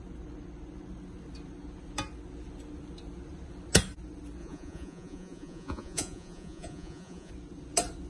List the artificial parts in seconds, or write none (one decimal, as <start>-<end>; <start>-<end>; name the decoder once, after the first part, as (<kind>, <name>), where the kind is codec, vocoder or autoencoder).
4.4-7.3 (vocoder, Vocos)